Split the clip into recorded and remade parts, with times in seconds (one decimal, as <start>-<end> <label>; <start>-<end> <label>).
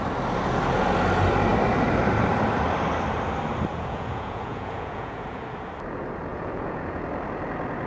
0.0-3.7 recorded; 3.7-5.4 remade; 5.4-6.3 recorded; 6.3-7.0 remade; 7.0-7.9 recorded